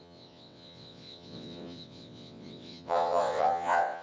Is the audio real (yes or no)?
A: no